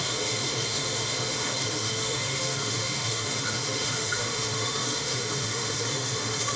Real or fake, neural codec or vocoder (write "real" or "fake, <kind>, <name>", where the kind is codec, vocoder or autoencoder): fake, autoencoder, DAC-VAE